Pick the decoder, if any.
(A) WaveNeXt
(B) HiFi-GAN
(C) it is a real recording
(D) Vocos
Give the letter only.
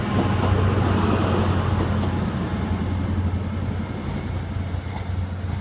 C